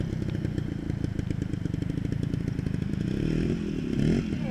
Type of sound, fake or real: real